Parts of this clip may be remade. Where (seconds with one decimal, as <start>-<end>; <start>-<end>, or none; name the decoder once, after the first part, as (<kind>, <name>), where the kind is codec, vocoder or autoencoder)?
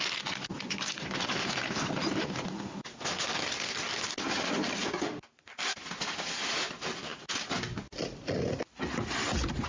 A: none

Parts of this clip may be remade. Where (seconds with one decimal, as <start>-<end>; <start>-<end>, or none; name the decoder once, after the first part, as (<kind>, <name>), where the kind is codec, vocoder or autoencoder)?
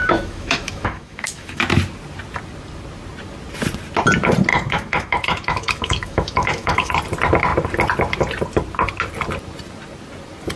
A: 0.0-1.6 (autoencoder, DAC-VAE); 4.5-6.9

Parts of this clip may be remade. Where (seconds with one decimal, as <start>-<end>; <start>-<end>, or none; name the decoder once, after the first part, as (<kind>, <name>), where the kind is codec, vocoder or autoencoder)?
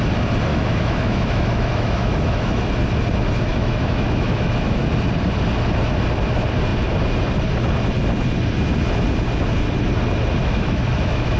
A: 0.5-2.6 (autoencoder, DAC-VAE); 3.5-4.8; 10.4-11.4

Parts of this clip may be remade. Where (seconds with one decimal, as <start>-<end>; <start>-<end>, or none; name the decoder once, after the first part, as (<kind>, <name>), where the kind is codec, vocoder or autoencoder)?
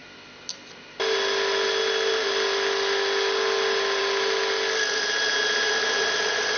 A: none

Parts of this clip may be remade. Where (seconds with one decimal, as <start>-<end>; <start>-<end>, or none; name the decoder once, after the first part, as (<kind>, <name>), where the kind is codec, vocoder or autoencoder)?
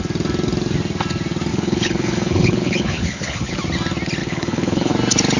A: 1.5-3.5 (codec, HILCodec); 4.2-4.9